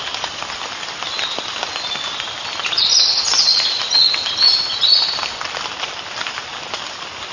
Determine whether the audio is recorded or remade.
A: recorded